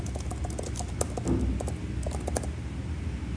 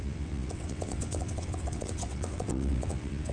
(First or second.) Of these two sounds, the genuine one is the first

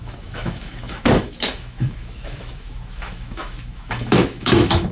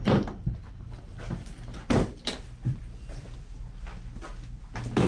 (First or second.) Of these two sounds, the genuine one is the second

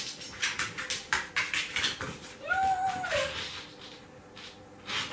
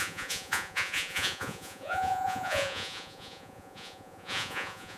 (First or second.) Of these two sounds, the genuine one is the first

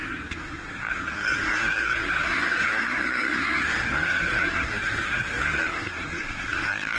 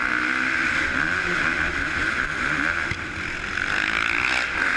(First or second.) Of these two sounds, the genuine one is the second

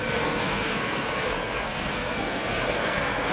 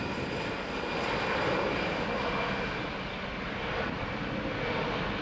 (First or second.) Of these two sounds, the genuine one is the second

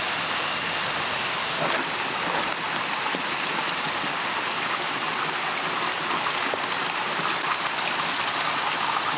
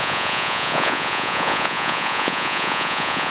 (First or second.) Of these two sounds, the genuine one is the first